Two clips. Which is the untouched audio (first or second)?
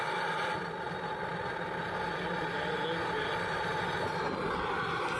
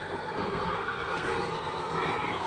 first